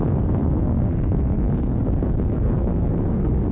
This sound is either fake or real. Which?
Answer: fake